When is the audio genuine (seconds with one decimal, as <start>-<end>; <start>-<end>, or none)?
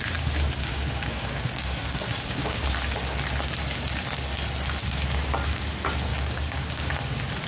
0.0-0.6; 2.7-6.1; 6.9-7.5